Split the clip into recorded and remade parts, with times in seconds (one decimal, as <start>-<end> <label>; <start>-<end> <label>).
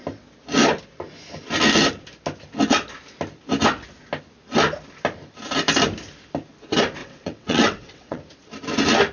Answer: 0.0-7.0 recorded; 7.0-8.2 remade; 8.2-9.1 recorded